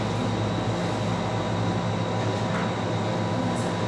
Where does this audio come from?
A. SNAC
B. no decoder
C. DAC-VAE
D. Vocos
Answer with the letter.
B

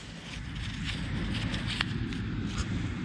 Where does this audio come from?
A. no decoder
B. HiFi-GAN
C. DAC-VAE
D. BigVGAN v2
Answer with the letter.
A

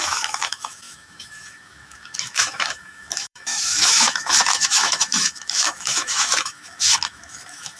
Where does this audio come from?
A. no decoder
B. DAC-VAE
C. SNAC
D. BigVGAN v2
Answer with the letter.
B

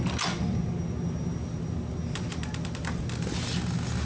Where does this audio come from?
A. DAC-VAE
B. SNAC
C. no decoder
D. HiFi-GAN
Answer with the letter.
C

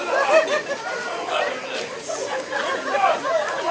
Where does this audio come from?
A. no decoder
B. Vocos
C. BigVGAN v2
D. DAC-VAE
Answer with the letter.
A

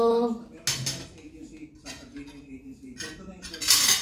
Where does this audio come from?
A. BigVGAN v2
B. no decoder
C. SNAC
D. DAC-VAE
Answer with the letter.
B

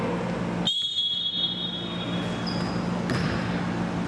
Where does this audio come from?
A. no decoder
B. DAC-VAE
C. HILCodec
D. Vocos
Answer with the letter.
A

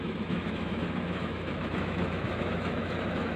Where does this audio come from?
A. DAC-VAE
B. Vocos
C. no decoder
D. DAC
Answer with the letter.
A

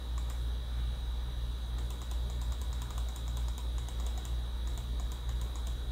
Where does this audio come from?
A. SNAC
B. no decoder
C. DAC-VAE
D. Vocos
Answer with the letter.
B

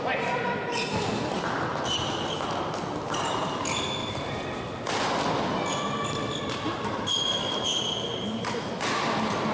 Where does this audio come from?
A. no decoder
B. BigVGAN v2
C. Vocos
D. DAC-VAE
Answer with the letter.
A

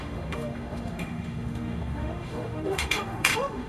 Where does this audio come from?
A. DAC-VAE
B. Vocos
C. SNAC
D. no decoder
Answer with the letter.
A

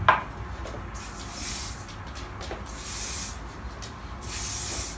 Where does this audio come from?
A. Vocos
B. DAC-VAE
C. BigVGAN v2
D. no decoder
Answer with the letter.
D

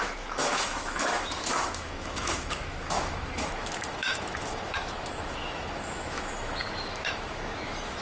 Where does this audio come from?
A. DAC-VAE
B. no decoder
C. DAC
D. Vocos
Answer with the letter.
A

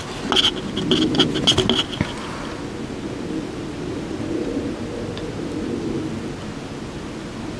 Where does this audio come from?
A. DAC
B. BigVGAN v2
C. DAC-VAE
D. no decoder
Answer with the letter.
D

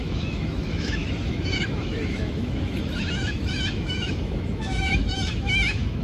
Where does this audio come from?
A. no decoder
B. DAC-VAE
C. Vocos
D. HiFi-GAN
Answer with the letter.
B